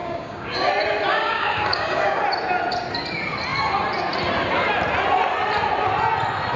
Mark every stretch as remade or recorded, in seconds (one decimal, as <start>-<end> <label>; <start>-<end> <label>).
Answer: 0.0-0.7 remade; 0.7-1.1 recorded; 1.1-2.2 remade; 2.2-6.6 recorded